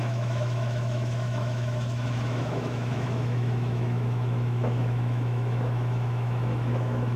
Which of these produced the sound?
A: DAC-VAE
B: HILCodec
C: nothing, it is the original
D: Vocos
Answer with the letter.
A